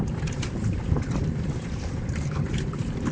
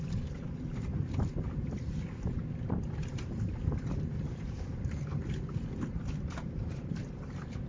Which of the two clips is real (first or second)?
second